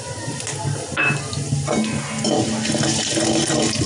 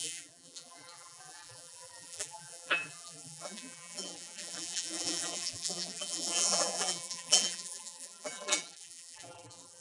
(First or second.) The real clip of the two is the first